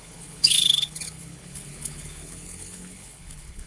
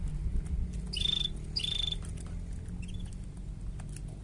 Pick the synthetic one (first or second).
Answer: first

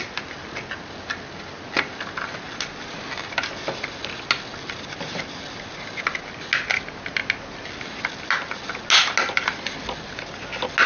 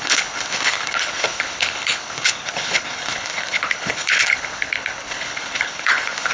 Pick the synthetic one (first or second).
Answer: second